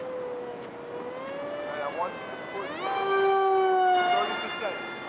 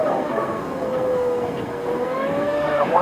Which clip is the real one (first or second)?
first